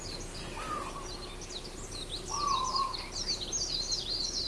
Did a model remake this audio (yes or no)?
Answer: no